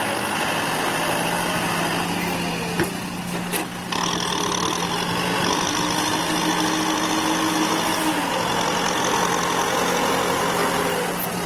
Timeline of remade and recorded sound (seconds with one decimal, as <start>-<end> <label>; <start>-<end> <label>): 0.0-11.5 recorded